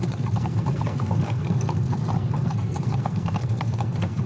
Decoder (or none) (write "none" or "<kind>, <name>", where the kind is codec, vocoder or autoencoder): codec, SNAC